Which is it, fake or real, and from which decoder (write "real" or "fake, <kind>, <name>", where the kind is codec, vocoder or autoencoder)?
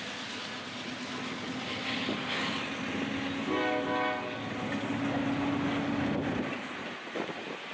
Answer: real